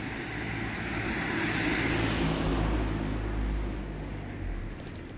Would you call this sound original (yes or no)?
yes